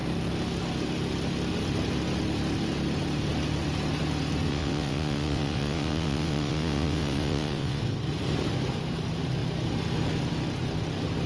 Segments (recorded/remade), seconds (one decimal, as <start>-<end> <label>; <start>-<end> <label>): 0.0-4.5 recorded; 4.5-7.8 remade; 7.8-11.3 recorded